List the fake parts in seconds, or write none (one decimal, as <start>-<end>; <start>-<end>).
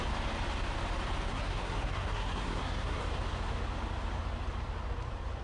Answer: 1.3-3.0